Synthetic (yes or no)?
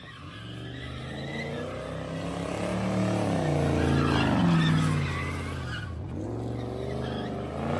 no